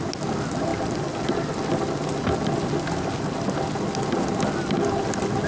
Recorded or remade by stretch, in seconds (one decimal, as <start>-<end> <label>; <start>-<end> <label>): 0.0-5.5 recorded